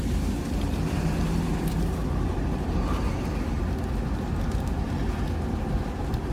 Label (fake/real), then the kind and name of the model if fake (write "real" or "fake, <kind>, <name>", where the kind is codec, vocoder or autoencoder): real